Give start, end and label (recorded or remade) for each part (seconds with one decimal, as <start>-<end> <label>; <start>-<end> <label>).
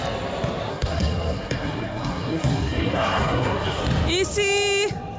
0.0-0.7 recorded; 0.7-3.8 remade; 3.8-5.2 recorded